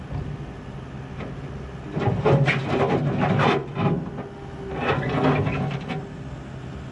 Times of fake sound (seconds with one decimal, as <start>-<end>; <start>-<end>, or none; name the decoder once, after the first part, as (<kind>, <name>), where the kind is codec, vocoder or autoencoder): none